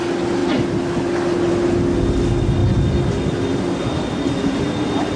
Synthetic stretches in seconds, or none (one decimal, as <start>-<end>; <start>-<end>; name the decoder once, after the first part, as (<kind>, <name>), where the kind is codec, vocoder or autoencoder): none